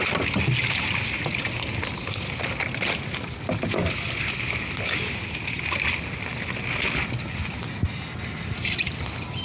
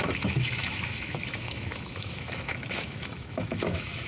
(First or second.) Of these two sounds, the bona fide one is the first